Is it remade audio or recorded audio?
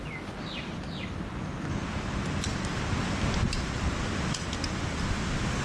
recorded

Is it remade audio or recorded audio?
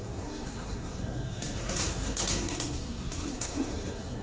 remade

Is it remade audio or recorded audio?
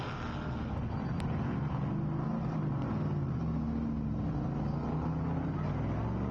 recorded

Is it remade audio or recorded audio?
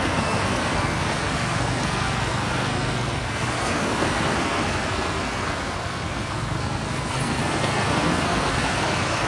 remade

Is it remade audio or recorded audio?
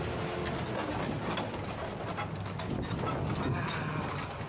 recorded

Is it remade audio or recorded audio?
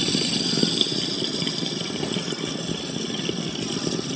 recorded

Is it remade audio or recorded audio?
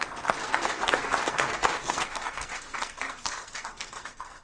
remade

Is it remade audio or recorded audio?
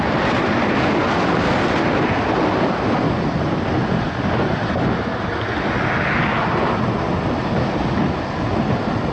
recorded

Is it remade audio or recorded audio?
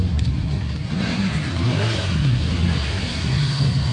remade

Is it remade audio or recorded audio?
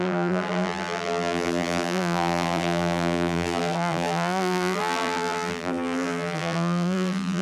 remade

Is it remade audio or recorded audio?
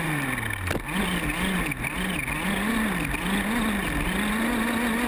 recorded